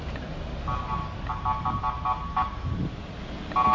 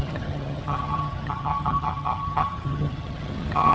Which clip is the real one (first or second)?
first